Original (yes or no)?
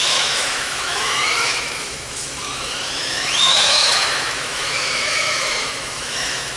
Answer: no